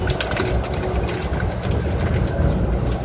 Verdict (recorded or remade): recorded